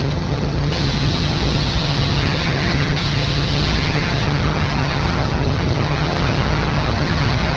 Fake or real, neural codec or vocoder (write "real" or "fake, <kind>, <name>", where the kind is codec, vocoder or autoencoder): fake, vocoder, HiFi-GAN